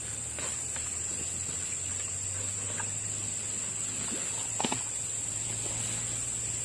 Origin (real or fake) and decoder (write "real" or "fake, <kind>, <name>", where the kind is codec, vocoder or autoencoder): real